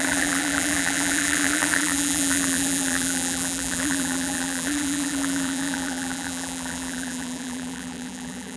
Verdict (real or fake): fake